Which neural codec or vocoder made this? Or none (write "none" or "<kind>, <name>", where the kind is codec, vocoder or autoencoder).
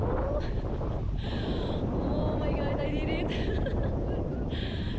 vocoder, BigVGAN v2